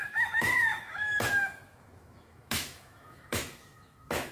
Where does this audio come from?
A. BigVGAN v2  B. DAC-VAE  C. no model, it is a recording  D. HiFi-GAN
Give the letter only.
B